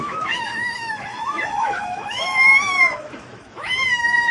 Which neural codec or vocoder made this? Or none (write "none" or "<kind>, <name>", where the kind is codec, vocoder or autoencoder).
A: autoencoder, DAC-VAE